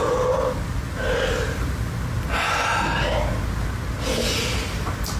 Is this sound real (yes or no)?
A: yes